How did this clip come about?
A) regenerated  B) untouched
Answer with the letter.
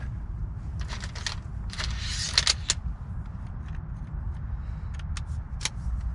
B